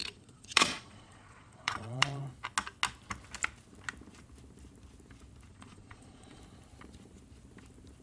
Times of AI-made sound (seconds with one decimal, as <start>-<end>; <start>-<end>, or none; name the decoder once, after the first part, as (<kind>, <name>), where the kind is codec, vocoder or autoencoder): 0.0-2.2 (vocoder, Vocos); 5.5-6.4